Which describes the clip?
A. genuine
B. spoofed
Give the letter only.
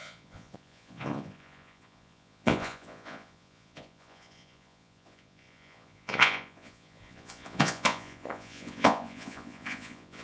B